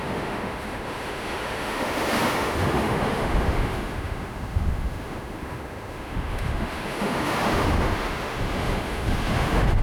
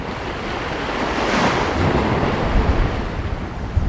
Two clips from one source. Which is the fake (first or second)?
first